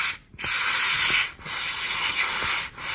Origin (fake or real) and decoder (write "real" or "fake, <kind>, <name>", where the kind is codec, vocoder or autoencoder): real